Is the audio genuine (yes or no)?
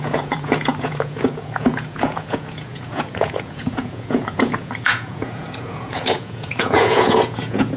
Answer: no